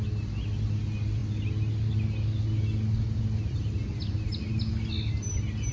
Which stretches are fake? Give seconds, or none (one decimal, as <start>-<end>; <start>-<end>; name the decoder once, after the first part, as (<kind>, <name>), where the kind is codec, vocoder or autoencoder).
none